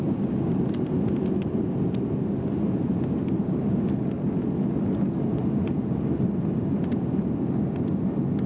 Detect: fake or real real